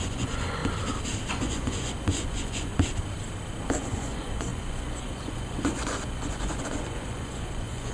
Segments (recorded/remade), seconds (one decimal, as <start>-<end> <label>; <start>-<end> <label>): 0.0-0.6 remade; 0.6-1.3 recorded; 1.3-2.7 remade; 2.7-3.8 recorded; 3.8-7.9 remade